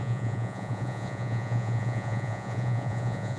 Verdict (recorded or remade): remade